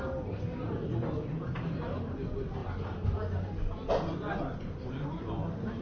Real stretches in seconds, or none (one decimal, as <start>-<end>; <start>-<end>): 0.0-5.8